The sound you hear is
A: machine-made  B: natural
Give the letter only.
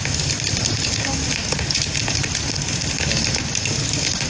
B